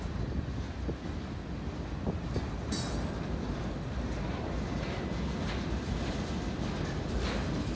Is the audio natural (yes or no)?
yes